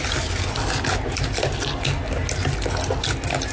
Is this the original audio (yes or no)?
yes